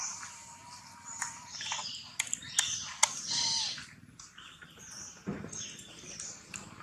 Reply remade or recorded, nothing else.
recorded